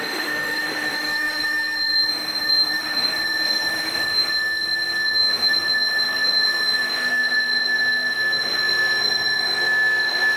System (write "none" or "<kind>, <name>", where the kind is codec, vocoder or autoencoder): autoencoder, DAC-VAE